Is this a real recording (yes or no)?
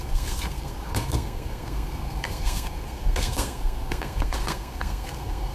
no